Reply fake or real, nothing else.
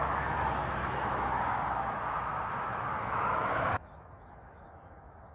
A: fake